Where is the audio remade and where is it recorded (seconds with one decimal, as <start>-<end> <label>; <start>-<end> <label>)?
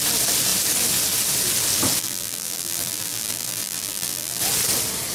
0.0-2.0 recorded; 2.0-4.4 remade; 4.4-5.1 recorded